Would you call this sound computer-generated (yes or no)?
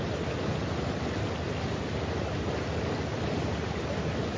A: no